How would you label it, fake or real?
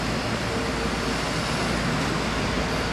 real